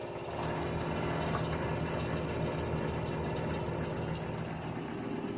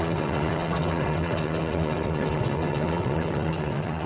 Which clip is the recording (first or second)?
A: first